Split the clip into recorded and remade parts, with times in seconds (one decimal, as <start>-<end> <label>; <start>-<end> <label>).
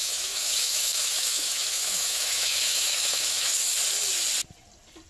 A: 0.0-3.5 remade; 3.5-5.1 recorded